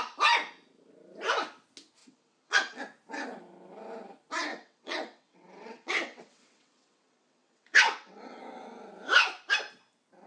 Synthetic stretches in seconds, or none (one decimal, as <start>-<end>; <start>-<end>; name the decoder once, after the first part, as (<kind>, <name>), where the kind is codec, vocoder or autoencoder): 2.0-2.8 (vocoder, WaveNeXt); 4.5-8.4